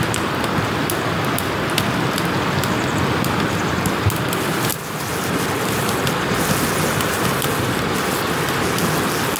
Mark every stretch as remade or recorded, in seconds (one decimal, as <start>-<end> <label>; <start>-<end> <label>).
0.0-9.4 recorded